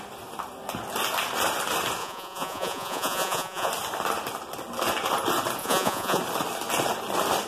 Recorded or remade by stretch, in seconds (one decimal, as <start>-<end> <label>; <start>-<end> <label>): 0.0-2.0 recorded; 2.0-3.7 remade; 3.7-5.6 recorded; 5.6-6.2 remade; 6.2-7.5 recorded